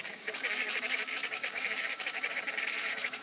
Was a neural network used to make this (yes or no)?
yes